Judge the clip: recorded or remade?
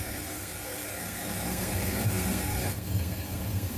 remade